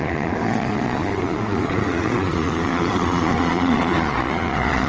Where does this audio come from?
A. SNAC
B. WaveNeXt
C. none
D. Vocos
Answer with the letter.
D